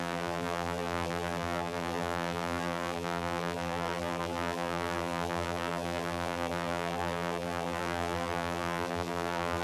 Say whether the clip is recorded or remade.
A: remade